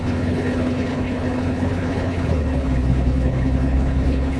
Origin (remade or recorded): remade